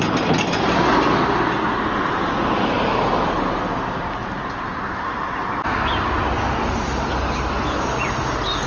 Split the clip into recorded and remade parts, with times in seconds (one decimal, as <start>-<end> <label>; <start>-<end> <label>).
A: 0.0-4.2 recorded; 4.2-5.6 remade; 5.6-8.7 recorded